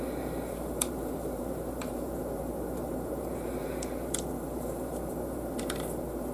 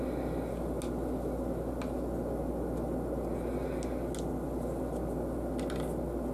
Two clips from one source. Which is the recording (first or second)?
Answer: second